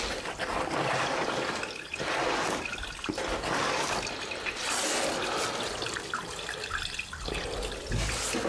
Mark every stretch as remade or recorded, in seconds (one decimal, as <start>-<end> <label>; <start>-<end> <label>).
0.0-8.5 recorded